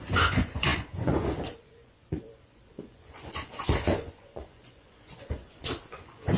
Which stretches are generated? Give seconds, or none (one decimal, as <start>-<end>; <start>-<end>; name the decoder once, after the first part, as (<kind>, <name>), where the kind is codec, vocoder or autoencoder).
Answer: 0.0-6.4 (vocoder, Vocos)